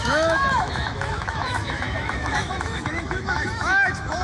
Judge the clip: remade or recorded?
remade